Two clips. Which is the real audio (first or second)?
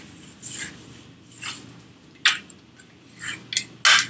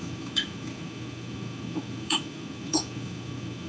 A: first